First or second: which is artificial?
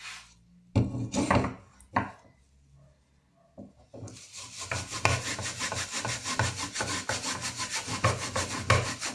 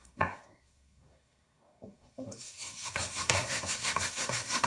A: second